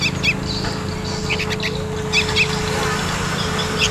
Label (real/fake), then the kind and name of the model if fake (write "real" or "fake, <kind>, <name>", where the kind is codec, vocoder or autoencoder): real